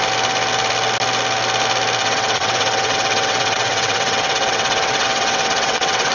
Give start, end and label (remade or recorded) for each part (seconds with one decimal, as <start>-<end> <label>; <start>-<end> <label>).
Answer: 0.0-2.0 recorded; 2.0-6.1 remade